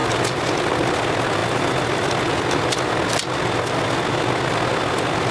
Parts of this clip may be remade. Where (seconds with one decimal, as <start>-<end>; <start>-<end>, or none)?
0.0-0.5